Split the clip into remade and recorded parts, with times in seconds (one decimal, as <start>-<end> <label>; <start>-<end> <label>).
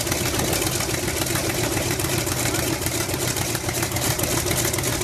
0.0-1.4 recorded; 1.4-4.2 remade; 4.2-5.0 recorded